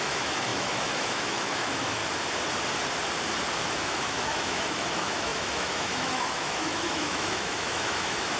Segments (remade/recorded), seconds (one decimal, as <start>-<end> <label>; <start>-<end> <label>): 0.0-2.0 remade; 2.0-3.6 recorded; 3.6-8.4 remade